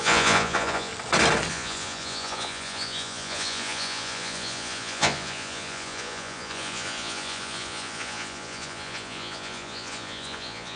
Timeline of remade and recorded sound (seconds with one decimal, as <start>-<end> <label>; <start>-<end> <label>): 0.0-0.9 remade; 0.9-1.5 recorded; 1.5-10.8 remade